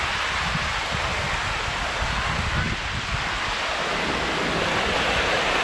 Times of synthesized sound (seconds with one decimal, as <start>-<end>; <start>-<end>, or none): 0.0-1.1; 4.5-5.6

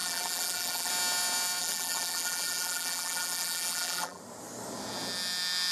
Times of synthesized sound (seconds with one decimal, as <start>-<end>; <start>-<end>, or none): 0.0-0.9; 1.6-4.2